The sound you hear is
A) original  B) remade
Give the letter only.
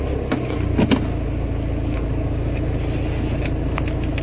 A